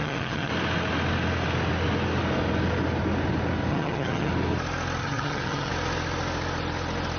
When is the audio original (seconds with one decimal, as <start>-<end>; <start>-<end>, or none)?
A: 0.5-3.7; 4.3-5.0; 5.7-7.2